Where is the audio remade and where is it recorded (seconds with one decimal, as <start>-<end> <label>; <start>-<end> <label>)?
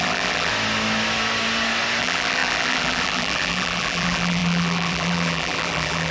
0.0-0.5 remade; 0.5-2.0 recorded; 2.0-6.1 remade